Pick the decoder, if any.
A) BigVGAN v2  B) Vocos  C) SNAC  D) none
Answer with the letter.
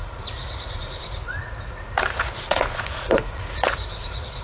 B